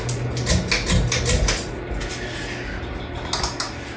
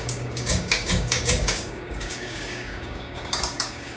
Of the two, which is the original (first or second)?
first